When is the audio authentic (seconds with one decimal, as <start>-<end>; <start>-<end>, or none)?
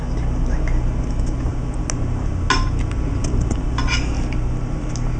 0.0-5.2